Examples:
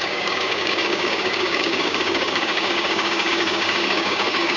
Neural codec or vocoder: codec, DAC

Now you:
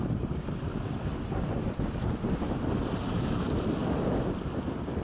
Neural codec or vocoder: none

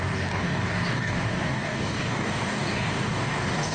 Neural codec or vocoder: codec, DAC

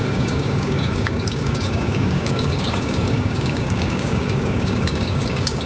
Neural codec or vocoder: codec, DAC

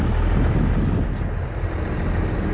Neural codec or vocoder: none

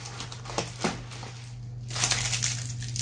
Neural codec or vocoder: none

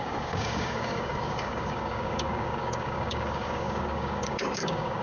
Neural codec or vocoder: codec, DAC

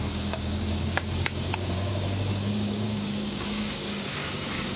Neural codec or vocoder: codec, DAC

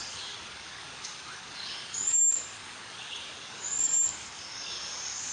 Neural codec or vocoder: codec, DAC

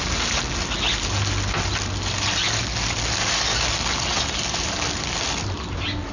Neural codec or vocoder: none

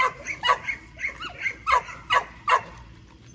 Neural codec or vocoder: none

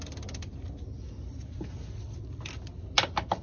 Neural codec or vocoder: none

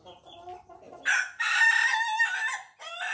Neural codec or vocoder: none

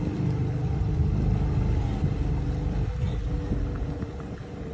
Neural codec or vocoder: none